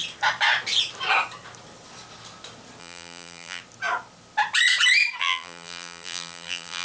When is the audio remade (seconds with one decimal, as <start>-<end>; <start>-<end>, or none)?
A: 2.8-3.6; 5.2-6.8